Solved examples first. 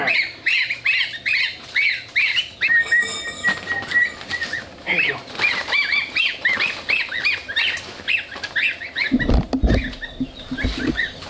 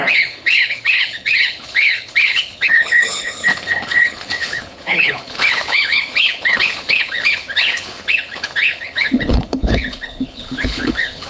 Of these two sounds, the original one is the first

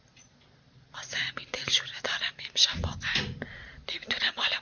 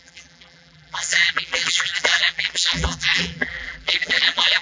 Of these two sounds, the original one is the first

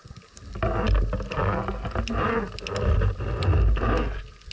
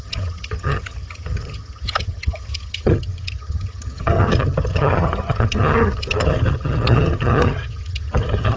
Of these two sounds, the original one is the first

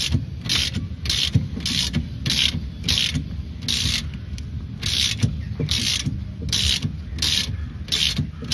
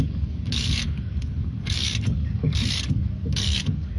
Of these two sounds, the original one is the first